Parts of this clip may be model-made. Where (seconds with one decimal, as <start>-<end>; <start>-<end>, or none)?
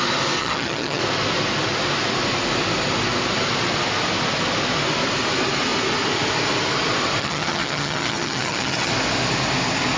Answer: 0.4-1.0; 7.2-8.9